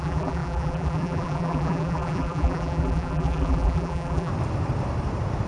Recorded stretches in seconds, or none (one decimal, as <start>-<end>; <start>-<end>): 4.3-5.5